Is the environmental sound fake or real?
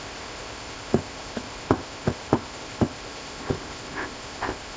fake